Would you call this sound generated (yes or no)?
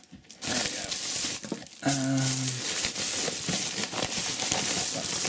no